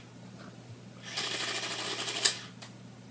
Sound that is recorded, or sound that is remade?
recorded